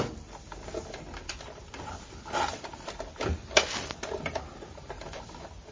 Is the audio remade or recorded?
remade